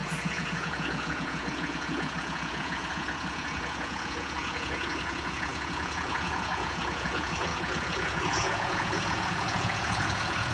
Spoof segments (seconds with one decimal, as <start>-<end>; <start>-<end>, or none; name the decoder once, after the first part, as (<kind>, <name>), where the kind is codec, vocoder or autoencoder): 0.0-10.5 (vocoder, Vocos)